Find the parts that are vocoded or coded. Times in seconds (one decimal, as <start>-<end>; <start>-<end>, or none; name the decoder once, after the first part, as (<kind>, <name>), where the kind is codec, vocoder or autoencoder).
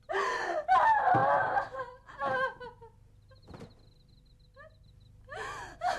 none